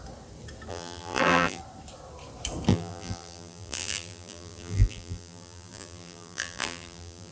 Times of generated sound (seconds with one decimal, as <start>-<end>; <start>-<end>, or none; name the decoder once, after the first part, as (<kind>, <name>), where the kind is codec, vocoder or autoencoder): 0.7-1.6 (vocoder, BigVGAN v2); 2.7-7.3